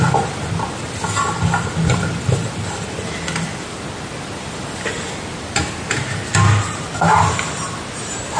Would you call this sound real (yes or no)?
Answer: yes